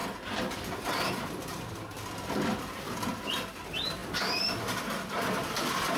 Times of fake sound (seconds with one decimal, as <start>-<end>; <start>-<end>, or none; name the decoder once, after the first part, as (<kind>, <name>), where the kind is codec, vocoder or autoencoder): none